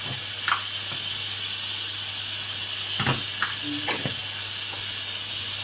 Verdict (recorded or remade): recorded